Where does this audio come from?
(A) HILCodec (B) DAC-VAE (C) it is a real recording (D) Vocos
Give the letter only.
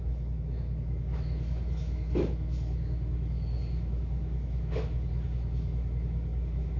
B